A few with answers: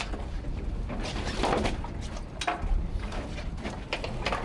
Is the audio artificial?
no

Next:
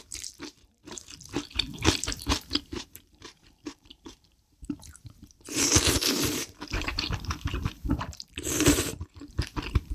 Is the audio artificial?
yes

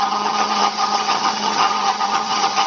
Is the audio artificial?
yes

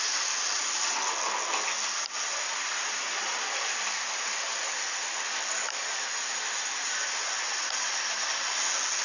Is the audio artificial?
no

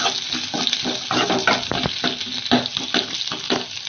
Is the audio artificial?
no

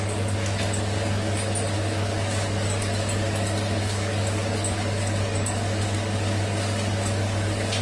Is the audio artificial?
yes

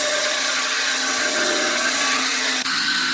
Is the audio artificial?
yes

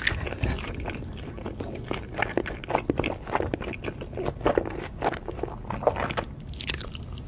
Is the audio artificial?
no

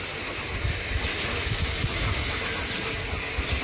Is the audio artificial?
no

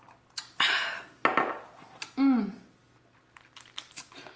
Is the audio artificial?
no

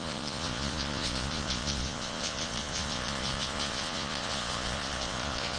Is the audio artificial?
yes